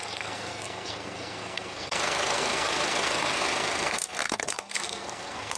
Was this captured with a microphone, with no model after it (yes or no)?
no